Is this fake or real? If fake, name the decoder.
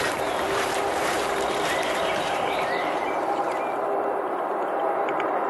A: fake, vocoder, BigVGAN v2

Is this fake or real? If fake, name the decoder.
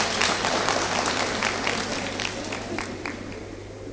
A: fake, vocoder, BigVGAN v2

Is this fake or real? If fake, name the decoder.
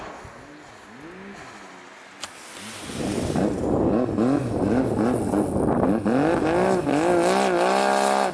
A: real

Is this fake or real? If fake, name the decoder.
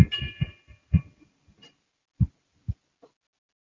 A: real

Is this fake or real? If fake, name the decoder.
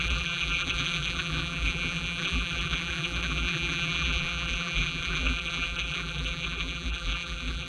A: fake, vocoder, BigVGAN v2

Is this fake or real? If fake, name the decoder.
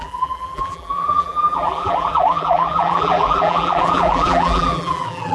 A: fake, vocoder, BigVGAN v2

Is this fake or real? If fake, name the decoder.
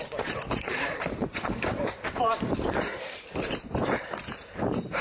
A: fake, vocoder, BigVGAN v2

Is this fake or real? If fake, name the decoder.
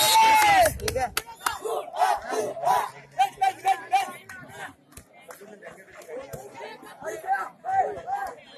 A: real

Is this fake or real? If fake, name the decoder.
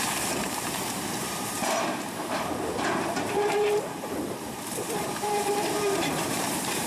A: fake, vocoder, BigVGAN v2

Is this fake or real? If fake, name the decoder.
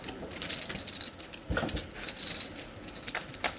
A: real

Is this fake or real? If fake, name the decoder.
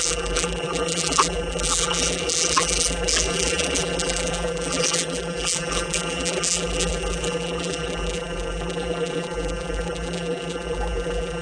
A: fake, vocoder, BigVGAN v2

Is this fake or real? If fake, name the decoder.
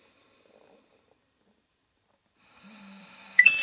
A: fake, vocoder, BigVGAN v2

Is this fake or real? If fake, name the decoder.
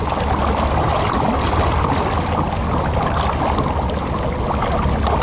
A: real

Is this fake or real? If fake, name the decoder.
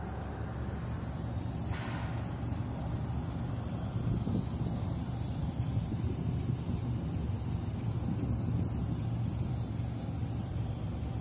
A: fake, vocoder, BigVGAN v2